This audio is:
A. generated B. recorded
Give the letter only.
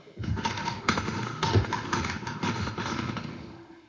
A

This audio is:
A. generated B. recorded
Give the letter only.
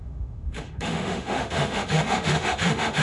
A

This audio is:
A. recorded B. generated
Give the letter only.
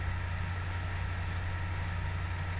A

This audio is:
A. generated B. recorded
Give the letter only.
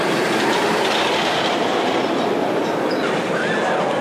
B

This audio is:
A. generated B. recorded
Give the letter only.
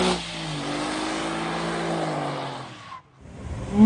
B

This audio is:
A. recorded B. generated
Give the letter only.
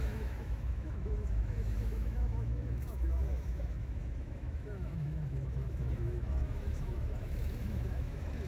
B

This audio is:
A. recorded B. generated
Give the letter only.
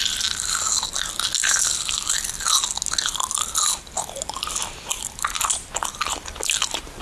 A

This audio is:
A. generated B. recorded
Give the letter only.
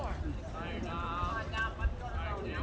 B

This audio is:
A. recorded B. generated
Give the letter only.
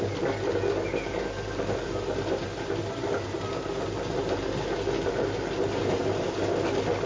A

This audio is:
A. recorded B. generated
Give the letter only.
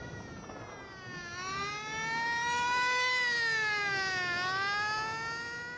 A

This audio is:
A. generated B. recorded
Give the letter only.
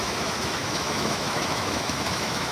A